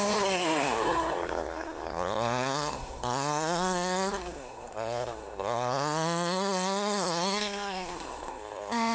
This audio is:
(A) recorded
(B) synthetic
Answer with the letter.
B